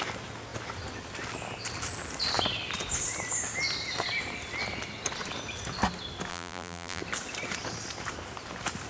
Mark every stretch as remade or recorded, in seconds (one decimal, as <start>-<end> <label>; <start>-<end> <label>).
0.0-6.3 recorded; 6.3-7.0 remade; 7.0-8.9 recorded